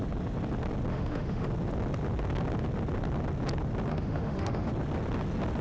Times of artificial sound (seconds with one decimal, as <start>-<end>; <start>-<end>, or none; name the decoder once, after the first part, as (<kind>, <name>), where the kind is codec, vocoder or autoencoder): 0.9-1.5 (autoencoder, DAC-VAE); 3.9-4.7